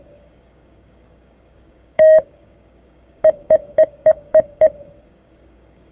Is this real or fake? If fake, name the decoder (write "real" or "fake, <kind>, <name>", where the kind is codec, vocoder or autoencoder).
fake, codec, DAC